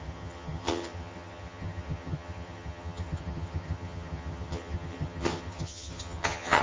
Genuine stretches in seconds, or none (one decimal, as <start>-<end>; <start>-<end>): none